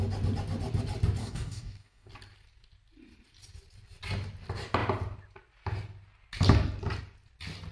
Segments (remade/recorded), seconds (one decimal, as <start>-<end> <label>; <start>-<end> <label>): 0.0-1.2 recorded; 1.2-2.1 remade; 2.1-7.7 recorded